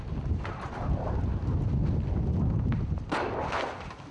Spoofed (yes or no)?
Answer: no